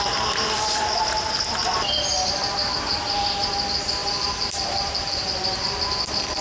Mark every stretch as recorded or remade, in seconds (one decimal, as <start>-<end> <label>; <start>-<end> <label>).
0.0-4.0 recorded; 4.0-5.3 remade; 5.3-6.4 recorded